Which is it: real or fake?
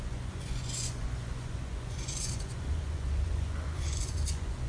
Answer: fake